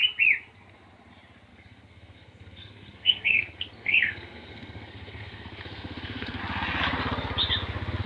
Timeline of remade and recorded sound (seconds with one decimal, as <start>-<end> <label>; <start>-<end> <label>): 0.0-1.5 recorded; 1.5-6.4 remade; 6.4-8.1 recorded